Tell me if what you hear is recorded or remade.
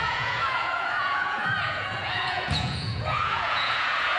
remade